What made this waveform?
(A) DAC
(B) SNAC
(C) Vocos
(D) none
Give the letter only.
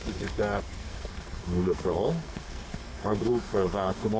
B